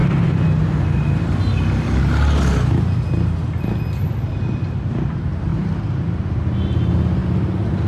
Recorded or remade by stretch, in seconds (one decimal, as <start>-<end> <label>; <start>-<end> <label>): 0.0-7.9 recorded